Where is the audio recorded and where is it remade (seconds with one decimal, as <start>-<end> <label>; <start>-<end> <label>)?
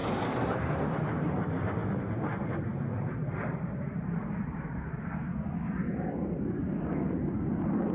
0.0-0.7 remade; 0.7-1.8 recorded; 1.8-4.8 remade; 4.8-7.9 recorded